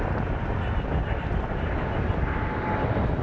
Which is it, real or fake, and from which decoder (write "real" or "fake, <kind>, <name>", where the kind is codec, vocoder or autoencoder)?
real